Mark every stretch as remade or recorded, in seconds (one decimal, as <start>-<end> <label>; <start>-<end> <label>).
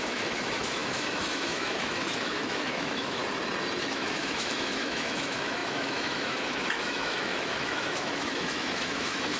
0.0-3.2 remade; 3.2-3.8 recorded; 3.8-9.4 remade